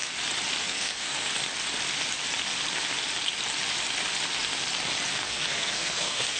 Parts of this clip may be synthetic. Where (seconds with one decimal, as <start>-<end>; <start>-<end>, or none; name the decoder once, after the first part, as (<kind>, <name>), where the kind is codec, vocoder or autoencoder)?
0.6-1.3 (codec, SNAC); 5.1-6.4